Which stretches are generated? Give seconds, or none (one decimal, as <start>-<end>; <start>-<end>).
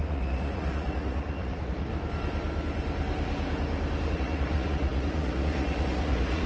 0.0-1.9; 4.1-6.5